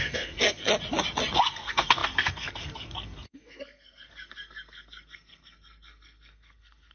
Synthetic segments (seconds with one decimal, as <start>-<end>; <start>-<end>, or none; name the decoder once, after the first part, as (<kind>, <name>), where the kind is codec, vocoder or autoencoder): 0.0-0.7 (codec, SNAC); 1.4-6.9